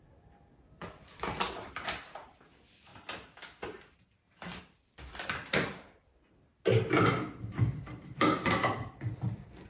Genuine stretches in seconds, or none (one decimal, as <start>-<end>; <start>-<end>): 2.9-4.6; 6.5-7.6